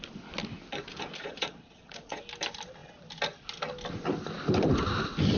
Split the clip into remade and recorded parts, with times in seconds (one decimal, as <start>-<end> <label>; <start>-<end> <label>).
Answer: 0.0-1.2 recorded; 1.2-2.2 remade; 2.2-5.4 recorded

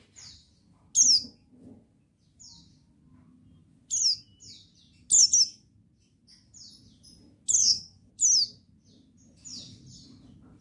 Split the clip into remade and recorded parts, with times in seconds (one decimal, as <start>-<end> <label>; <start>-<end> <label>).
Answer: 0.0-7.6 recorded; 7.6-8.1 remade; 8.1-10.6 recorded